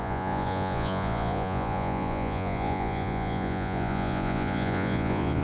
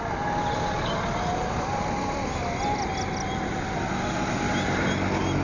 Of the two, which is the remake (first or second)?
first